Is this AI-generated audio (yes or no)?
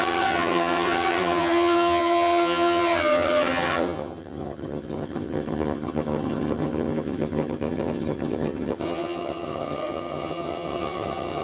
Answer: yes